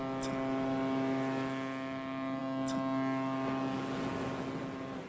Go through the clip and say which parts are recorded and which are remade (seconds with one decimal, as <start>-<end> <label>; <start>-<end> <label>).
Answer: 0.0-5.1 recorded